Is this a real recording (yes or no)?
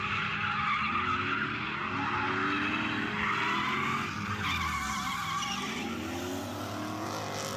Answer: yes